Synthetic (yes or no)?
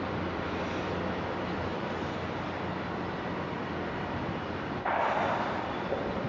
yes